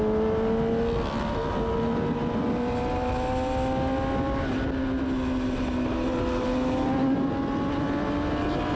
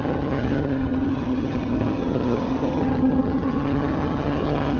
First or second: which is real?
first